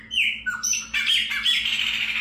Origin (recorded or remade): recorded